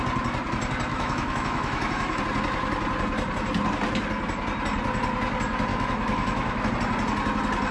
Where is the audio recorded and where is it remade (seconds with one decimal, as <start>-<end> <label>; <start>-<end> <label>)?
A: 0.0-0.9 recorded; 0.9-2.2 remade; 2.2-5.7 recorded; 5.7-6.7 remade; 6.7-7.7 recorded